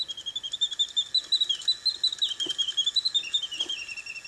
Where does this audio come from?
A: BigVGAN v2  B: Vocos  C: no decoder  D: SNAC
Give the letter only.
C